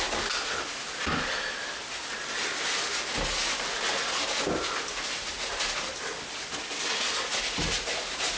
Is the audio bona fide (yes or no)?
yes